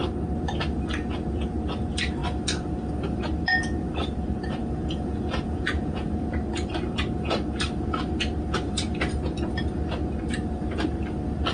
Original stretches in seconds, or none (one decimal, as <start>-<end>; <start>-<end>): 0.0-4.6; 6.3-11.5